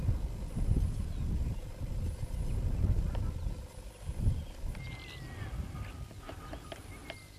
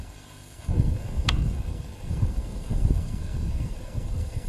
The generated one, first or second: second